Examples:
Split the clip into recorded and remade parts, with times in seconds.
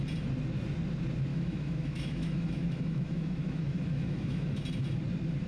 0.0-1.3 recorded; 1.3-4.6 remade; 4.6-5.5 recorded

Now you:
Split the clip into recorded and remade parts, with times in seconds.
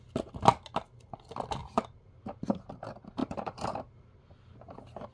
0.0-1.6 recorded; 1.6-2.7 remade; 2.7-3.2 recorded; 3.2-4.1 remade; 4.1-5.1 recorded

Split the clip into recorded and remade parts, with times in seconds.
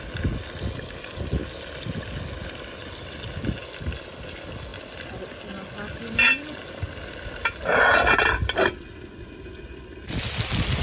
0.0-10.8 recorded